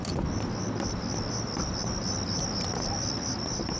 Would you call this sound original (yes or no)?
yes